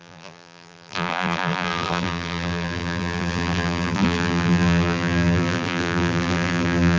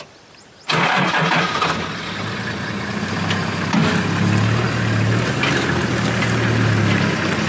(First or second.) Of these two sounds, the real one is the second